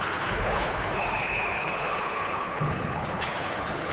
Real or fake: fake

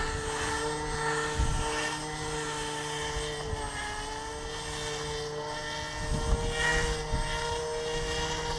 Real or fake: real